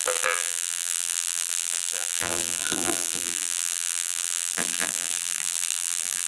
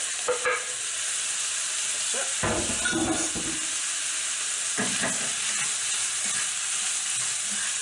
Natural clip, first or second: second